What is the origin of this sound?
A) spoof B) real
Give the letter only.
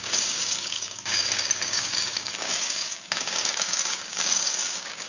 A